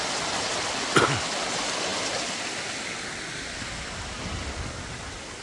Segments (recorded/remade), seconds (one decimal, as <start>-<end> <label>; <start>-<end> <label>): 0.0-5.4 recorded